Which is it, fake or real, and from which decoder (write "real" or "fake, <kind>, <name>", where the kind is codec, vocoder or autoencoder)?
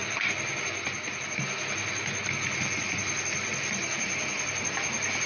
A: real